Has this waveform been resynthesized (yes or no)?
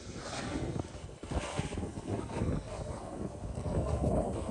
yes